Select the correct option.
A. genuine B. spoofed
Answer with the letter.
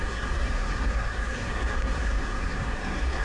B